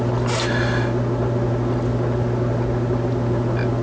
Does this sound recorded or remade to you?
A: recorded